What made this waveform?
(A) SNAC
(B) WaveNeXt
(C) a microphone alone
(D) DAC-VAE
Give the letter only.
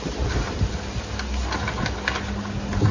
C